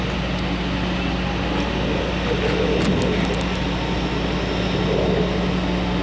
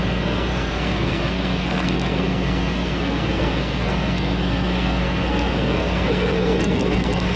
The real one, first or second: first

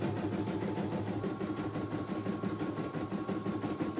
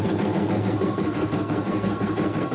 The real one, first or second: first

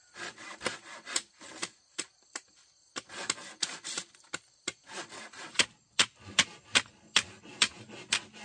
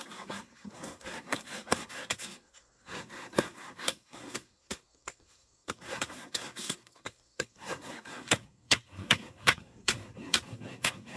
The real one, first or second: first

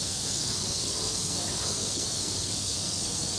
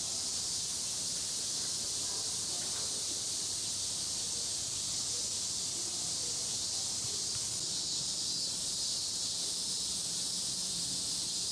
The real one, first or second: second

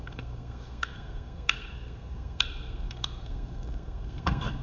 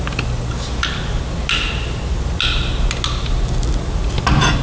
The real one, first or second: second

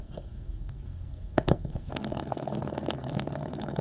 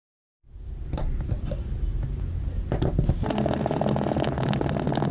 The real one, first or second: second